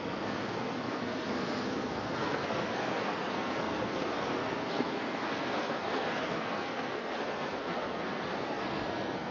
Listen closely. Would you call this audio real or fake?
fake